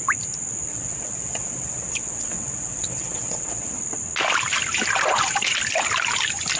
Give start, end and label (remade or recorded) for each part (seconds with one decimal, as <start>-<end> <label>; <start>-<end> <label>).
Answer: 0.0-0.7 recorded; 0.7-3.8 remade; 3.8-6.6 recorded